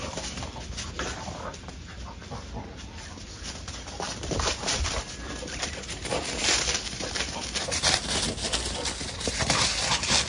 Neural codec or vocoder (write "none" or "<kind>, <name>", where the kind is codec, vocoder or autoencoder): none